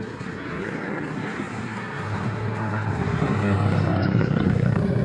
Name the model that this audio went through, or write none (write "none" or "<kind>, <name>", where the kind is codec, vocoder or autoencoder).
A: codec, SNAC